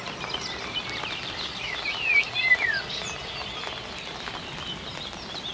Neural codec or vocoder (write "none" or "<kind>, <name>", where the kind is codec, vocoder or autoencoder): none